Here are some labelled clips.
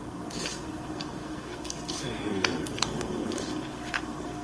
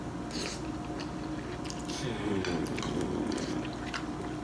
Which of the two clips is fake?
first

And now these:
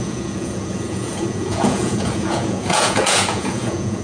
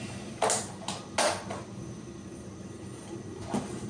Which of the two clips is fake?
first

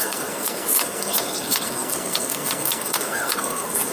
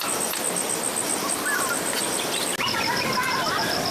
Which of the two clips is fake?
first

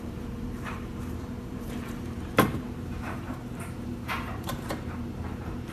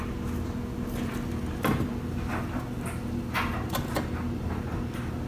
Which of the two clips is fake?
first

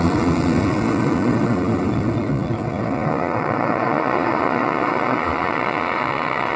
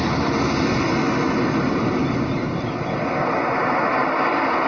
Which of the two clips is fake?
first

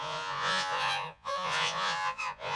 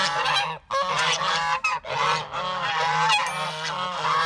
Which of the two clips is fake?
first